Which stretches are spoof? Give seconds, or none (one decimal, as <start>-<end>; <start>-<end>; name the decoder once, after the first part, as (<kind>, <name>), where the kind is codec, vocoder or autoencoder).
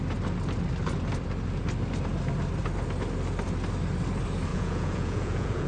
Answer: 4.5-5.7 (vocoder, Vocos)